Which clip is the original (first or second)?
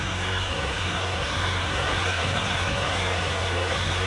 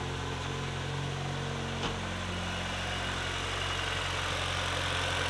second